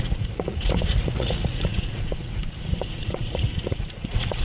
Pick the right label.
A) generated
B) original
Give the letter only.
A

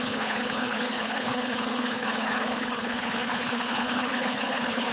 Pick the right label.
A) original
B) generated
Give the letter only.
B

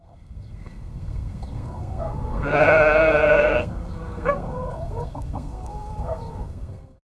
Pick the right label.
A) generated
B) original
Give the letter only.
A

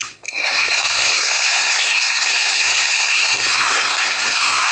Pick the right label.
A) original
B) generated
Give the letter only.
B